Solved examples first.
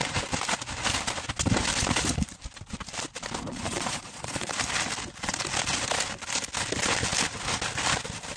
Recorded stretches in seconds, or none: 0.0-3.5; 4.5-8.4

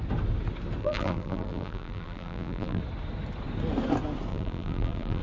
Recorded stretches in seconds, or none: 0.0-0.8; 2.8-4.3

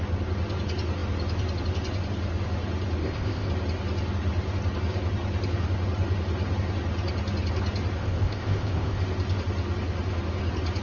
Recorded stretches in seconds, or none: 0.0-3.0; 3.5-8.0; 9.0-10.8

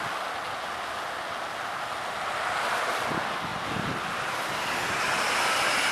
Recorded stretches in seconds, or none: 0.0-5.9

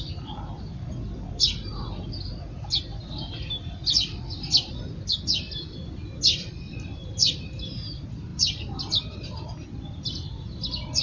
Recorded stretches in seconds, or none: 0.0-11.0